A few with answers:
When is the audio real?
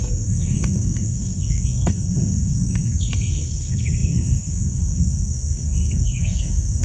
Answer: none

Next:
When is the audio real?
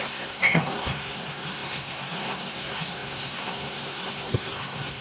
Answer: none